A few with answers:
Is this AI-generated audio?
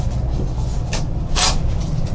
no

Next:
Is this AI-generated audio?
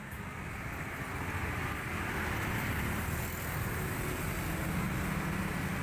no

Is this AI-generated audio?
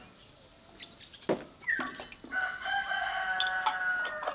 no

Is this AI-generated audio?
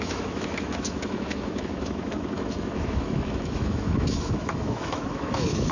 yes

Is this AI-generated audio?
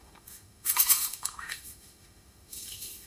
yes